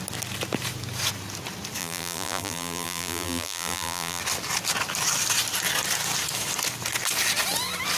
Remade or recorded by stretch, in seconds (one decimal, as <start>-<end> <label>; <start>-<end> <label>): 0.0-1.8 recorded; 1.8-4.2 remade; 4.2-8.0 recorded